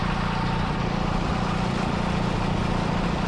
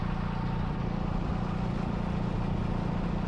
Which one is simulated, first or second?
first